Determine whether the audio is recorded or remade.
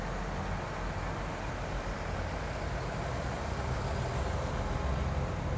recorded